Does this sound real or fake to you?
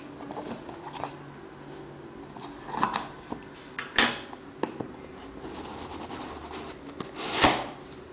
real